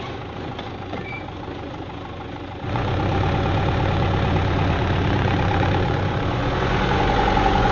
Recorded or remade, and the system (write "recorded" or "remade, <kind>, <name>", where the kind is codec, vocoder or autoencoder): remade, vocoder, Vocos